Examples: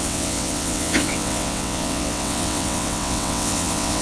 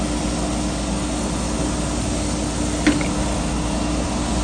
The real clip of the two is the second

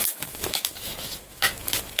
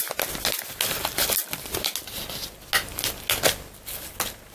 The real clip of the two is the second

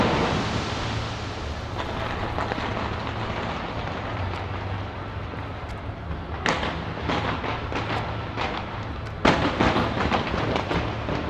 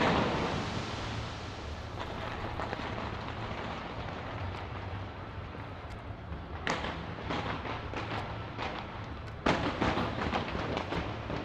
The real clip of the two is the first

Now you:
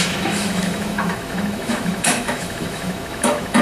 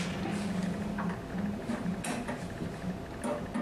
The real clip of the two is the second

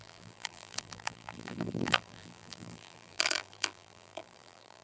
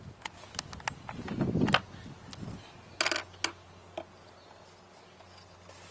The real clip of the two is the second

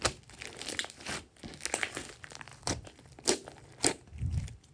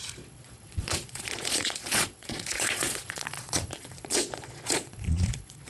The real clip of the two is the first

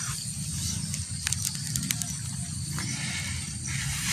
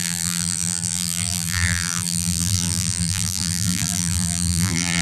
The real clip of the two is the first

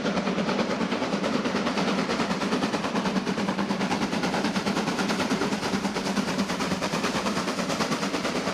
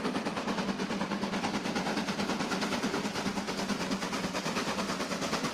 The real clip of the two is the second